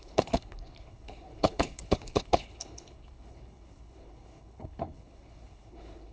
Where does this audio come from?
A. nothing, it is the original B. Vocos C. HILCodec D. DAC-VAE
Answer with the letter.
C